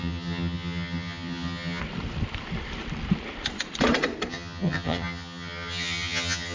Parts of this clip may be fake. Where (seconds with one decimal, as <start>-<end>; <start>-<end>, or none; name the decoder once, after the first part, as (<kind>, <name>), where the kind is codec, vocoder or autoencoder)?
0.0-1.8 (vocoder, HiFi-GAN); 4.3-6.5